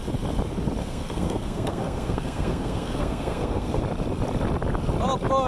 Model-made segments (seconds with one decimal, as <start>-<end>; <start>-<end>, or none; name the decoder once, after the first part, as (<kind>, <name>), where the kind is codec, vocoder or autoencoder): 0.8-3.8 (codec, SNAC)